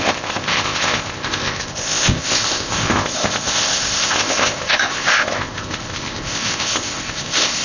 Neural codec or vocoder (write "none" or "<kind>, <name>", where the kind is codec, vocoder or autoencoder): codec, ZipCodec